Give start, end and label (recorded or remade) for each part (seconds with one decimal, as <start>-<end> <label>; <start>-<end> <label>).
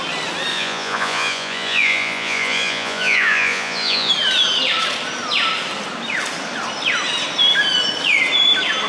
0.0-0.5 recorded; 0.5-4.1 remade; 4.1-8.9 recorded